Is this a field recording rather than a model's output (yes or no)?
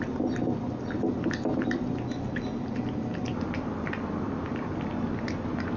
yes